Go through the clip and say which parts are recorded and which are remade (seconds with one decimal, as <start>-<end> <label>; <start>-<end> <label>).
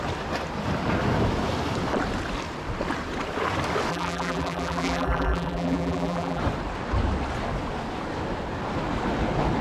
0.0-3.9 recorded; 3.9-6.4 remade; 6.4-9.6 recorded